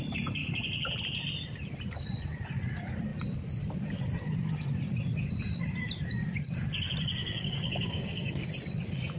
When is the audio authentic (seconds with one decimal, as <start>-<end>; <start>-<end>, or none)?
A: 0.0-7.2; 8.5-9.2